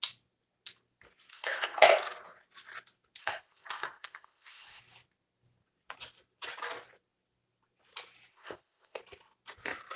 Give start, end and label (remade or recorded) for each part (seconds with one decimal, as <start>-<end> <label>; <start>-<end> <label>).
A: 0.0-1.3 recorded; 1.3-1.9 remade; 1.9-3.2 recorded; 3.2-4.8 remade; 4.8-8.3 recorded; 8.3-9.0 remade; 9.0-10.0 recorded